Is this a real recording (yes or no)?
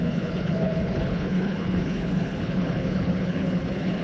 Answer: no